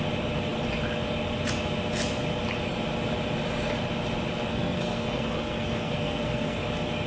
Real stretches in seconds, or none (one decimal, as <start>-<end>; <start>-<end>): 0.0-4.5; 6.6-7.1